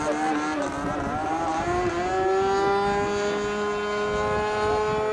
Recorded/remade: recorded